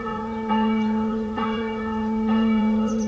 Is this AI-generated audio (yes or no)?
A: yes